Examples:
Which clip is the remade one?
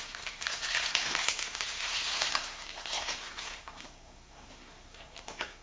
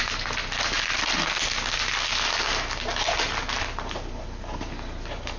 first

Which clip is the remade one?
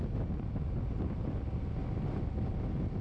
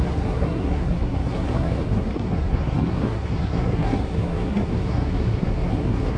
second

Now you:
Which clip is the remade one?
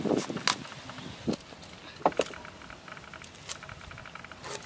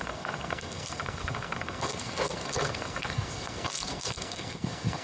second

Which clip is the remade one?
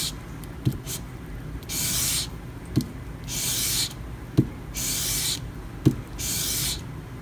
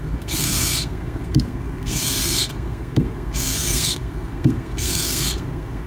second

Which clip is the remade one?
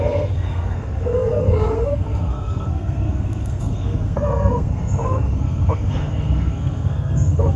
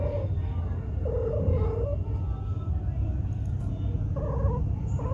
first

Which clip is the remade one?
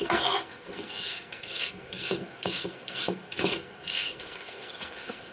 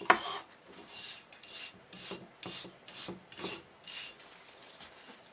first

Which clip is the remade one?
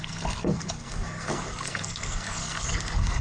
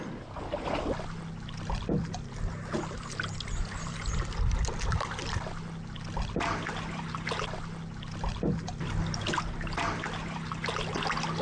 first